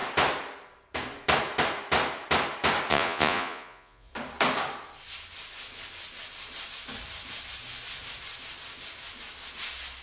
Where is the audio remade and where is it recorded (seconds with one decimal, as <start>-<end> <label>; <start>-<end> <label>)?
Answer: 0.0-2.9 recorded; 2.9-4.1 remade; 4.1-10.0 recorded